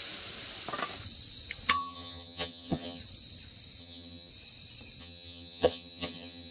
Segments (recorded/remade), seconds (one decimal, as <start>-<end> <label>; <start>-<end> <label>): 0.0-1.7 recorded; 1.7-3.0 remade; 3.0-3.8 recorded; 3.8-4.3 remade; 4.3-5.0 recorded; 5.0-6.5 remade